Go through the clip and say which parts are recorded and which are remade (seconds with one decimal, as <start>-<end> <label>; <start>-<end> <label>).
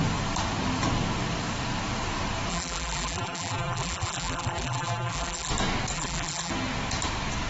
0.0-2.5 recorded; 2.5-5.5 remade; 5.5-5.9 recorded; 5.9-6.5 remade; 6.5-7.5 recorded